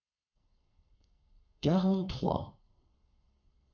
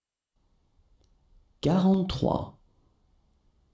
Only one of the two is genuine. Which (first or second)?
second